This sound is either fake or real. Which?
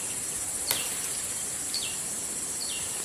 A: fake